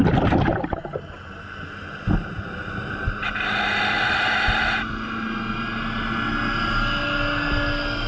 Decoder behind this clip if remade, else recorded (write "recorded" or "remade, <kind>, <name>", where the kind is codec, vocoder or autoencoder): recorded